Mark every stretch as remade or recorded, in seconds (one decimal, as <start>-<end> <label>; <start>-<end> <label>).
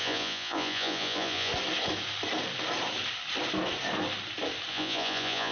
0.0-1.5 remade; 1.5-4.7 recorded; 4.7-5.5 remade